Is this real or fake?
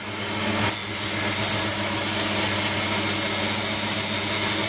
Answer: real